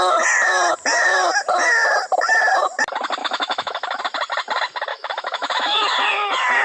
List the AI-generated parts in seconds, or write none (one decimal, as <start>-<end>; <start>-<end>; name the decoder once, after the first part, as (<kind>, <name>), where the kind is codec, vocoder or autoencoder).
3.2-4.0 (autoencoder, DAC-VAE); 4.9-5.9